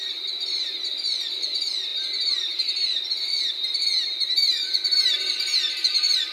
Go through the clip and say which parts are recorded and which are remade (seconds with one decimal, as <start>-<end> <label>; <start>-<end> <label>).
0.0-1.9 remade; 1.9-5.3 recorded; 5.3-6.3 remade